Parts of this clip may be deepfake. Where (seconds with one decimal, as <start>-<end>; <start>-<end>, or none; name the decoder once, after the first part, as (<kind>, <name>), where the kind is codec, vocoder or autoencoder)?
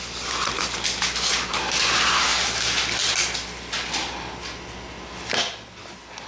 none